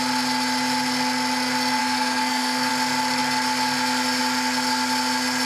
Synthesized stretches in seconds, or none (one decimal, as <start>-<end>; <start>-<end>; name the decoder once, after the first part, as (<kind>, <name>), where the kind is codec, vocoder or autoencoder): 1.8-2.7 (codec, SNAC)